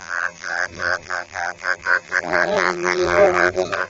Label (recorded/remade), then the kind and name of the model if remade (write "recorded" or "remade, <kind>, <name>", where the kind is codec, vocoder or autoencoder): remade, vocoder, BigVGAN v2